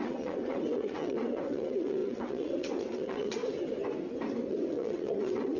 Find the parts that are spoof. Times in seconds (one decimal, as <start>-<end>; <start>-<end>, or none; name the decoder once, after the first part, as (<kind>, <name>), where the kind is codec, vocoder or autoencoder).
0.0-3.4 (vocoder, WaveNeXt); 4.5-5.6